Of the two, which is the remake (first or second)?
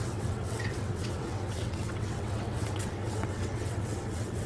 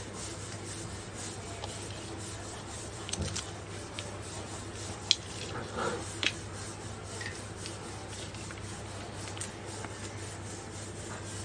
first